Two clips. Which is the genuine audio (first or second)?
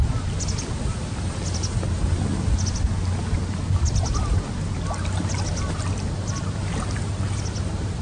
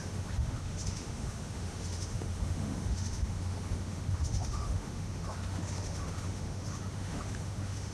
first